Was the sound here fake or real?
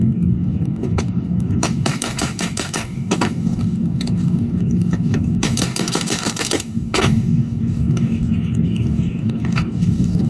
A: fake